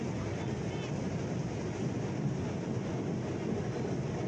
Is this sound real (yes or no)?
yes